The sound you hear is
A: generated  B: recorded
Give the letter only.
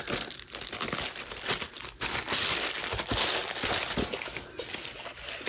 A